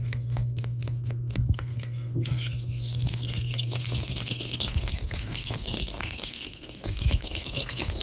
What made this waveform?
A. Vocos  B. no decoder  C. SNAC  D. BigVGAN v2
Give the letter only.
C